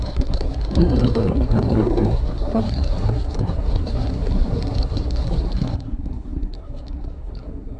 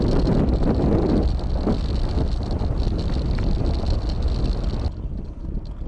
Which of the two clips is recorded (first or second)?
second